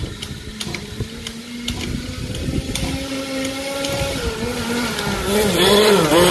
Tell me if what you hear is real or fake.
real